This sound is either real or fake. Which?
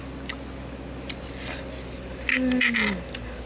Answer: real